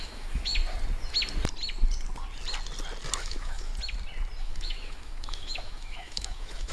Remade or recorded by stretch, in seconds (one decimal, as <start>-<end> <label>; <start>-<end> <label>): 0.0-0.5 remade; 0.5-3.2 recorded; 3.2-3.7 remade; 3.7-4.4 recorded; 4.4-6.7 remade